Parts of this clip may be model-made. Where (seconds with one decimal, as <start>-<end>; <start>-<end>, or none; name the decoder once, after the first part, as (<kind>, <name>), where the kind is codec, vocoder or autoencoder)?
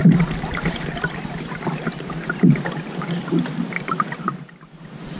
none